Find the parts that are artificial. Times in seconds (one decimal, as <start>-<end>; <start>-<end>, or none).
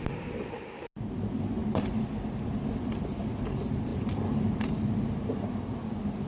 none